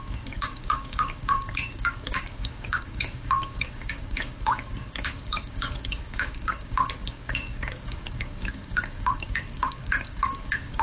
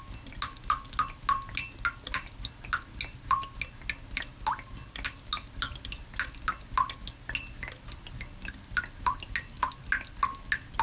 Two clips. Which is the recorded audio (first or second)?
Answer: second